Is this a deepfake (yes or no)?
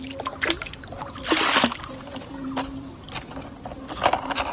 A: no